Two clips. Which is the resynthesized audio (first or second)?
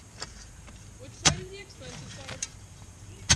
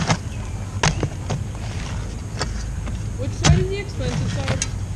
first